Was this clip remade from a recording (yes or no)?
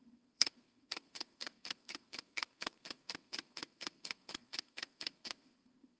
yes